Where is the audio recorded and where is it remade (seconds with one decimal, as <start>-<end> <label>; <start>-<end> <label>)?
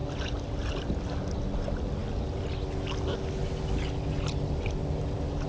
0.0-5.5 recorded